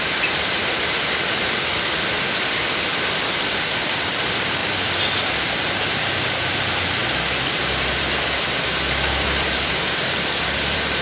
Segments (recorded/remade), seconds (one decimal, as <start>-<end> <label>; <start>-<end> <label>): 0.0-7.0 remade; 7.0-7.6 recorded; 7.6-11.0 remade